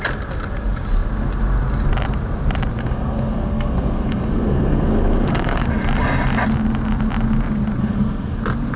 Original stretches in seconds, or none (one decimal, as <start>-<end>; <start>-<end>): 0.0-2.8; 5.7-7.8; 8.4-8.8